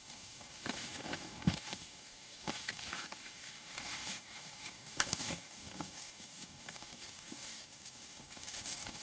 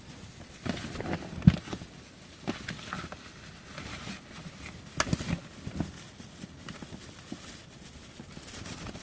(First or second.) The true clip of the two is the second